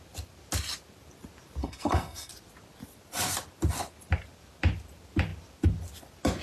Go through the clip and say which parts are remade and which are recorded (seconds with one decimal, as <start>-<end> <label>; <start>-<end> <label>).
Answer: 0.0-1.6 recorded; 1.6-2.3 remade; 2.3-6.4 recorded